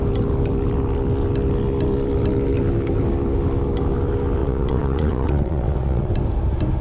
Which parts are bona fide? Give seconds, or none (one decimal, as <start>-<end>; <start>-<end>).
0.0-4.4; 6.1-6.8